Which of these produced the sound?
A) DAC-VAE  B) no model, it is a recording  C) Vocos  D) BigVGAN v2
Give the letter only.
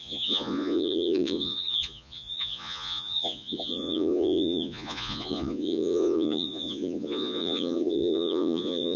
C